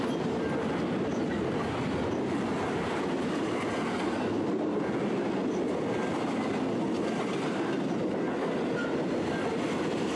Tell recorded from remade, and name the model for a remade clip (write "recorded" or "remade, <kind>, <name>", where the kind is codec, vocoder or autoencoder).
recorded